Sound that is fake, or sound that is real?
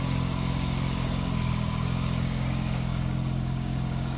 fake